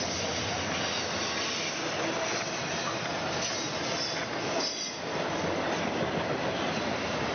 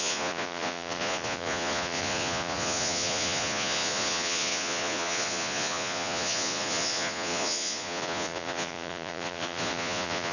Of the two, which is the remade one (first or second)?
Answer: second